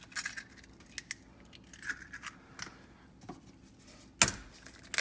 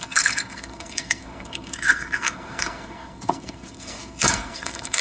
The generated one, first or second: second